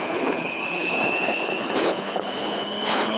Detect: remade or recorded remade